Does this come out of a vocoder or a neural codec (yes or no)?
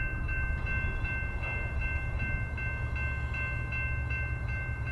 no